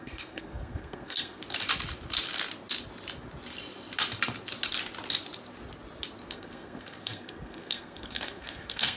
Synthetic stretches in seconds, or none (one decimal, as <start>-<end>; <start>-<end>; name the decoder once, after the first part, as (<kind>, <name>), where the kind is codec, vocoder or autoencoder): 0.0-1.4 (codec, SNAC); 6.3-9.0